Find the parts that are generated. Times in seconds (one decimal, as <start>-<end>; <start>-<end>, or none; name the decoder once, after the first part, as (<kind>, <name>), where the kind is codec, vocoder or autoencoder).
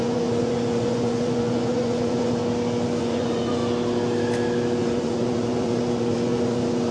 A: 0.0-2.4 (vocoder, Vocos); 3.0-3.6; 4.8-6.9